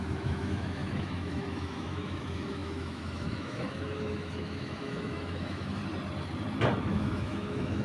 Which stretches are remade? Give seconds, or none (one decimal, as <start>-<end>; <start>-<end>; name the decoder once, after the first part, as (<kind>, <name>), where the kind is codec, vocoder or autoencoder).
0.0-5.8 (autoencoder, DAC-VAE); 6.8-7.8